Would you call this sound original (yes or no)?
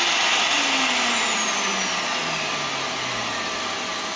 yes